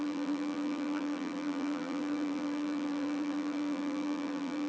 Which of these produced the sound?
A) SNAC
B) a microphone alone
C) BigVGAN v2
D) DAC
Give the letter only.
C